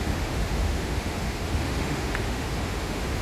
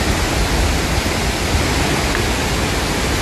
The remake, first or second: first